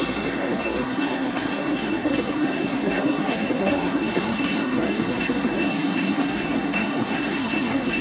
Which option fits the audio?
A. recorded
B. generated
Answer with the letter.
B